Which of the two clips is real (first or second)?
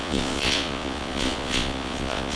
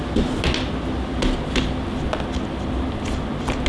second